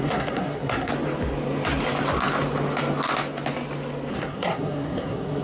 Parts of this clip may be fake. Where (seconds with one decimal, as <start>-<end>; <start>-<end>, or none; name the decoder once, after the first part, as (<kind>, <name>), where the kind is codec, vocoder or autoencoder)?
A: 0.0-0.9 (codec, SNAC); 4.1-5.4